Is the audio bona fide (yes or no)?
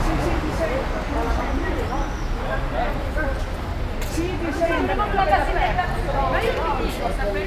yes